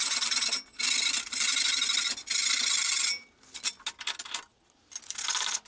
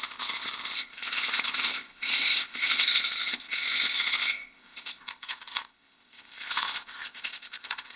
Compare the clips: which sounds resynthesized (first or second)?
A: second